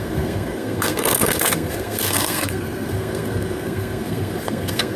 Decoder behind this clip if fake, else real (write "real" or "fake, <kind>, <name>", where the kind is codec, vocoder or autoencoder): fake, codec, SNAC